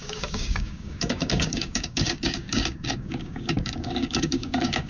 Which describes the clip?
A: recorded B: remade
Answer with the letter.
B